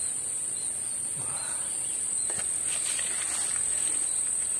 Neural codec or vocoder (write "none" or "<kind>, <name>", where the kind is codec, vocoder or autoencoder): none